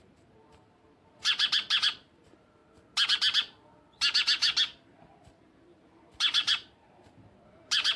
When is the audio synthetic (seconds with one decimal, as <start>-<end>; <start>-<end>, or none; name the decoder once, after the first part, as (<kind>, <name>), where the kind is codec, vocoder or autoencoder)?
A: 0.0-2.6 (vocoder, BigVGAN v2); 4.9-8.0